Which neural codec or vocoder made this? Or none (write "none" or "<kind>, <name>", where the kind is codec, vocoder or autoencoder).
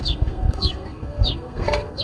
codec, SNAC